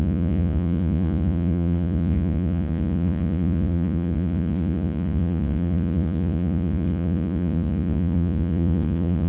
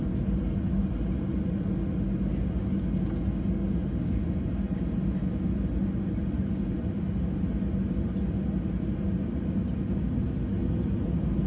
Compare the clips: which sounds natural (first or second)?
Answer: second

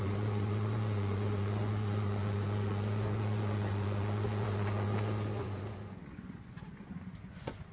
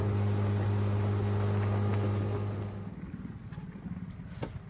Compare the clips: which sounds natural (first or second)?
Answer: second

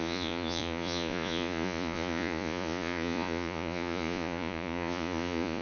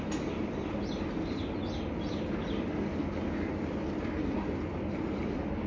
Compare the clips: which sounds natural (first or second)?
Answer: second